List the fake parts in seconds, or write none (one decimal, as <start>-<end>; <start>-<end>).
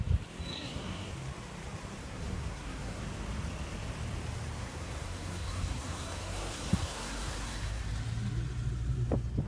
0.5-1.1; 2.0-3.0; 4.6-7.8